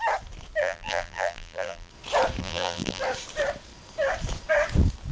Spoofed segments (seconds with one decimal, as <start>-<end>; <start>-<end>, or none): 0.6-1.9; 2.4-3.0